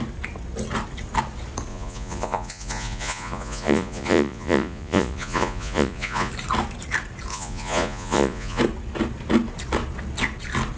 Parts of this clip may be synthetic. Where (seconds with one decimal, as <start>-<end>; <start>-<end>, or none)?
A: 1.7-6.3; 7.3-8.6